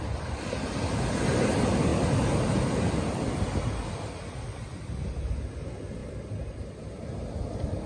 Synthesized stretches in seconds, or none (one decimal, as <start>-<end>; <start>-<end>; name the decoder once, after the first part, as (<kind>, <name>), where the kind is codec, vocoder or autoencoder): none